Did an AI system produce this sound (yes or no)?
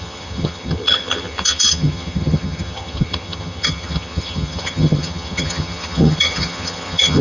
yes